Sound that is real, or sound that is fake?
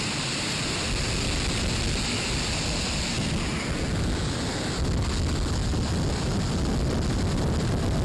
real